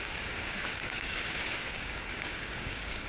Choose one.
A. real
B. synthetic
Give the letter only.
B